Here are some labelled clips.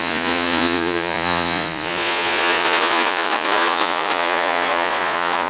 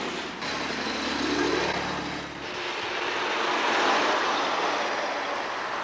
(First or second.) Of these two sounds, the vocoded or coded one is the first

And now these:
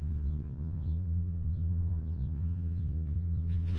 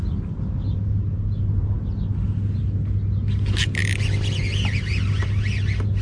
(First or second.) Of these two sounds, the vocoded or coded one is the first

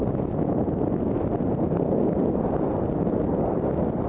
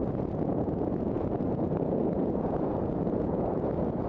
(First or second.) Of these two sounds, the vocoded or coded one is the second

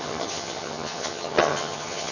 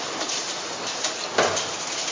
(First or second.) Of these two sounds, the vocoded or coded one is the first